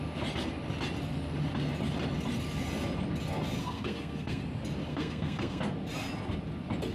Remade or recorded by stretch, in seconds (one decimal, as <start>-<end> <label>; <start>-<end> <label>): 0.0-3.6 recorded; 3.6-4.4 remade; 4.4-4.9 recorded; 4.9-5.6 remade; 5.6-6.9 recorded